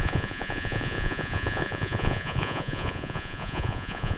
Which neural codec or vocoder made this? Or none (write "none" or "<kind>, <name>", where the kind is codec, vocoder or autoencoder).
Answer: vocoder, Vocos